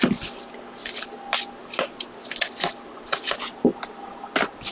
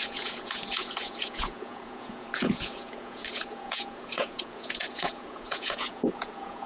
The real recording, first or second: first